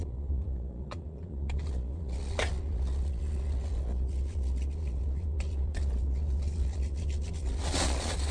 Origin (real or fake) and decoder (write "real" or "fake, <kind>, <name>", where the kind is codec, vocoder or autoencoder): fake, vocoder, Vocos